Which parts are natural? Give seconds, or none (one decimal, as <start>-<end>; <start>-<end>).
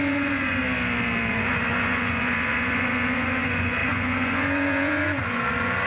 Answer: 0.6-1.3